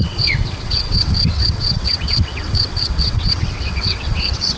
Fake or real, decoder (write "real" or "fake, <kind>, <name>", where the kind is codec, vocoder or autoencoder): fake, vocoder, WaveNeXt